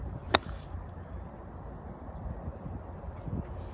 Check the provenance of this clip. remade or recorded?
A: remade